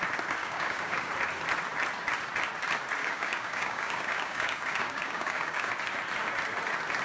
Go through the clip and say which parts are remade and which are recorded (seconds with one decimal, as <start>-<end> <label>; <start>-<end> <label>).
0.0-0.4 recorded; 0.4-1.1 remade; 1.1-3.0 recorded; 3.0-5.7 remade; 5.7-7.0 recorded